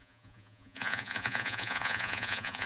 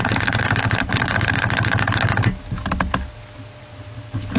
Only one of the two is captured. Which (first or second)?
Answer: second